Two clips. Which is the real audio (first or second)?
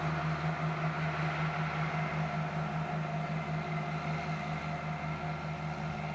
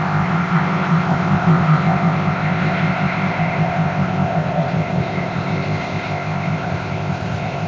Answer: first